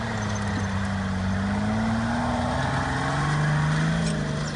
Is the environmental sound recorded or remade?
recorded